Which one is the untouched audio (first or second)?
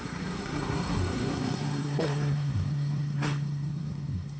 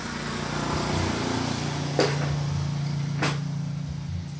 second